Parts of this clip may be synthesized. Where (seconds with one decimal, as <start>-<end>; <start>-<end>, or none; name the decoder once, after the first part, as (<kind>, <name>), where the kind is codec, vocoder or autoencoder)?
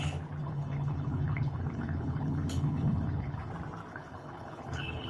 0.4-3.5 (codec, HILCodec); 3.9-5.1